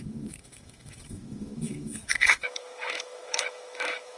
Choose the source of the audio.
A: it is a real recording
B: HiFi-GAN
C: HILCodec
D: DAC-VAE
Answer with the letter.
D